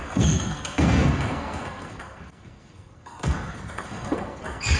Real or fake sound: fake